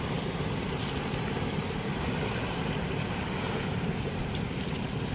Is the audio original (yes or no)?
yes